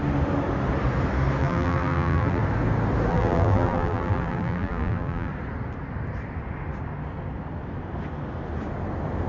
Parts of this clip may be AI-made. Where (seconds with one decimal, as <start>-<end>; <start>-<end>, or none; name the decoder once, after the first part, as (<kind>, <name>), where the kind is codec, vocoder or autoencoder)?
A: 1.4-2.4 (vocoder, BigVGAN v2); 3.1-5.3